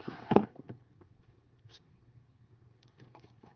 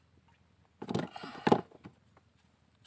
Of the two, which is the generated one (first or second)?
first